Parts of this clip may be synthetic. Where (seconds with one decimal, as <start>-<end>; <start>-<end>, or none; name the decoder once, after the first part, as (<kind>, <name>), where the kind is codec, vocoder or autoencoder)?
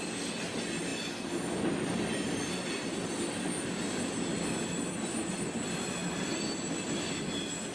none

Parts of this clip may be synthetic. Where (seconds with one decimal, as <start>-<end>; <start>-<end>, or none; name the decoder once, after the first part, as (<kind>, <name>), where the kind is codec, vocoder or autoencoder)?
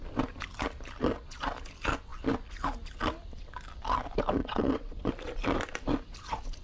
4.4-5.1 (vocoder, WaveNeXt)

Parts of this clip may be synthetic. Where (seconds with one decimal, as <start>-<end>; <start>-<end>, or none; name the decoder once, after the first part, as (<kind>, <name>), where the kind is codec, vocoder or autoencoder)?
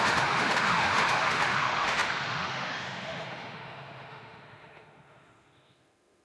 0.0-6.2 (autoencoder, DAC-VAE)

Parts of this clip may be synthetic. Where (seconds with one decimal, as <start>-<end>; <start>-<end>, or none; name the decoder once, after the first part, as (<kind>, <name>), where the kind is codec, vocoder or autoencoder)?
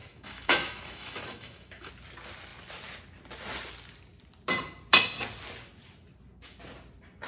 0.0-1.9 (autoencoder, DAC-VAE)